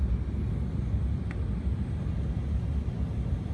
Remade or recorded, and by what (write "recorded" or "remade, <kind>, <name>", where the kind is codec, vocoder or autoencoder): recorded